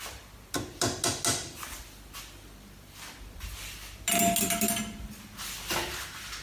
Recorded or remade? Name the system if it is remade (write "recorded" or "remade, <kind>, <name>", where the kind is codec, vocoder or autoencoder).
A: recorded